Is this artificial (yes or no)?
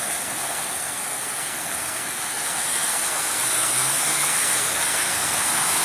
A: yes